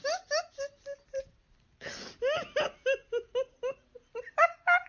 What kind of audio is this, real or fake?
real